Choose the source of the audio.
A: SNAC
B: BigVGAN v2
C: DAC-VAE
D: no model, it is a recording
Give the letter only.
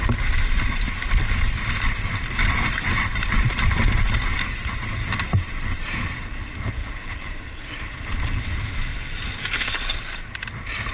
D